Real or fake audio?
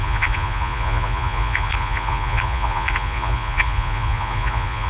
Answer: fake